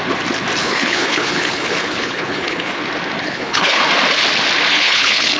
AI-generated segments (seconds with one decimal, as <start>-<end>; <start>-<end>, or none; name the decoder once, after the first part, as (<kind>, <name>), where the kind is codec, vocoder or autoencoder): 0.6-2.8 (codec, HILCodec); 3.2-3.8; 4.7-5.4